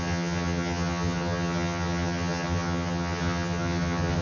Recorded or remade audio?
remade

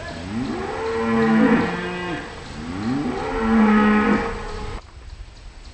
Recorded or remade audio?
recorded